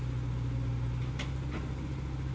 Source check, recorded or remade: recorded